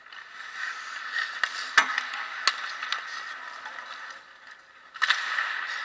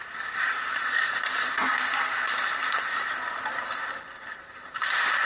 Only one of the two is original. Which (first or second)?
first